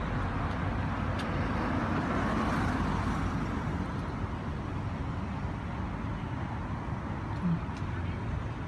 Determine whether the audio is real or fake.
real